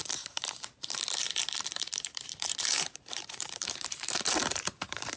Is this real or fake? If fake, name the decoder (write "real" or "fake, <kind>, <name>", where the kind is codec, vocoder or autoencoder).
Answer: fake, vocoder, BigVGAN v2